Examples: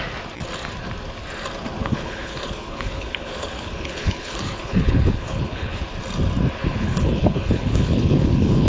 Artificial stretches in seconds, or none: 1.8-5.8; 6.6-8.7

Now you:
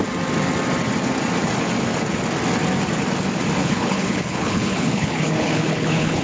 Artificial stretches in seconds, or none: 3.6-6.2

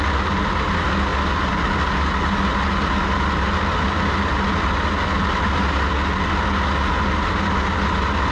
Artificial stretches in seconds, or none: none

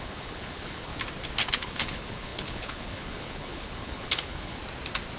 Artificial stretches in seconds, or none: 0.0-0.9; 1.5-4.6

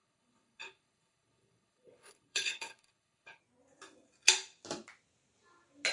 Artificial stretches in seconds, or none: 0.0-3.4

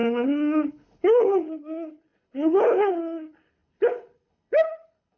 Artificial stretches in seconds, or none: 0.0-5.2

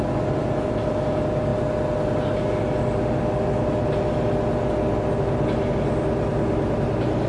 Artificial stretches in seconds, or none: none

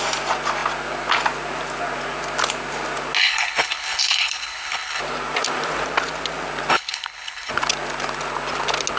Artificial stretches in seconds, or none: 3.2-5.0; 6.7-7.5